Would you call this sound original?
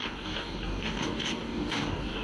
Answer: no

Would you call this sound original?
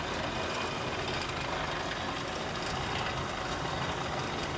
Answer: yes